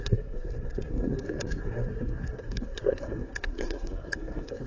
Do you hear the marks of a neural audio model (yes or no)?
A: yes